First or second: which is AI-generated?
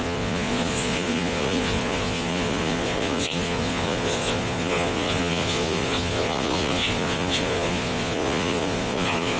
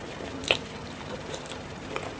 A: first